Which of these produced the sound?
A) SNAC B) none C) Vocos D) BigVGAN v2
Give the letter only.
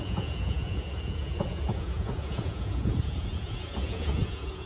C